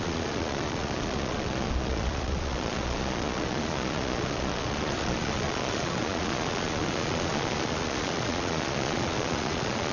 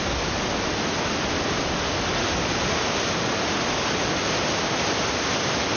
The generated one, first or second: first